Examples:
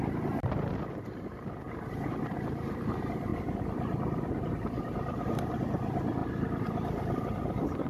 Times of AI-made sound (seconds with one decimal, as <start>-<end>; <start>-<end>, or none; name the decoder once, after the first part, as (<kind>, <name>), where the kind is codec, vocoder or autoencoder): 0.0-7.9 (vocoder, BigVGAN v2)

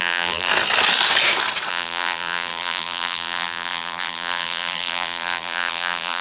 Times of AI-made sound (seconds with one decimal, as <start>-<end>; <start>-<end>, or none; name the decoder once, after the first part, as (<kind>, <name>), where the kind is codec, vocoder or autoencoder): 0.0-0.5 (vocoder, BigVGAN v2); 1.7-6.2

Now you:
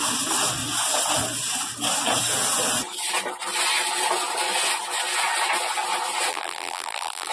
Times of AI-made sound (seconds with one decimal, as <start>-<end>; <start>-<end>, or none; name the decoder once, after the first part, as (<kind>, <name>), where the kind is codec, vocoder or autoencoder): 6.3-7.3 (vocoder, BigVGAN v2)

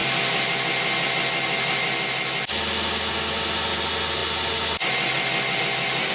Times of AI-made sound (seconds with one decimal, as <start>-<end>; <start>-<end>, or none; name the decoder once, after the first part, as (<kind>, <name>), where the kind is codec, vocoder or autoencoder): none

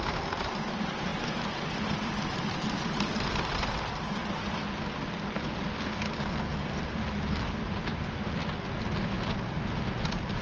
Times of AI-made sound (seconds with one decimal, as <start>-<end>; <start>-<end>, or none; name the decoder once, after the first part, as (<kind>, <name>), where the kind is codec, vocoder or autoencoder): 0.0-4.2 (vocoder, BigVGAN v2); 6.4-8.4; 9.8-10.4